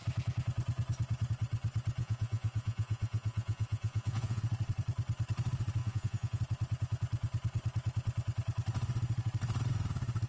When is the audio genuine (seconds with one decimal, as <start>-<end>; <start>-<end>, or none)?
0.0-2.0; 4.4-5.8; 6.4-10.3